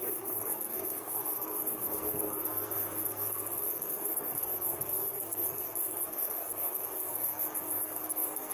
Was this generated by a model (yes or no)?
yes